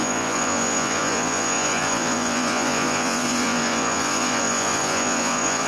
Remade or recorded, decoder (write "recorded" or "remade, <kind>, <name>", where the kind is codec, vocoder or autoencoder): remade, vocoder, Vocos